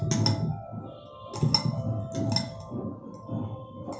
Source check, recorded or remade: recorded